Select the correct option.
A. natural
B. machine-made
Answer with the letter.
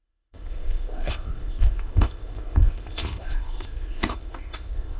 B